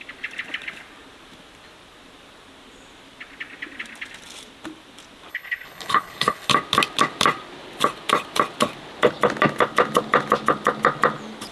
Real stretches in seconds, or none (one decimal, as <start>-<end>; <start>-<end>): 0.0-5.3; 6.5-11.5

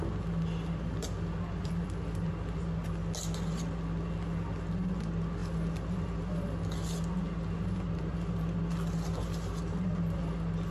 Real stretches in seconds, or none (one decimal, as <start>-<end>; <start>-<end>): 0.0-10.7

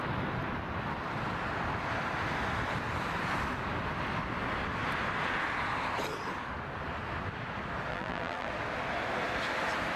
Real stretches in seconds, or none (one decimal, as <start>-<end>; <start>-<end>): 0.0-7.9; 8.5-10.0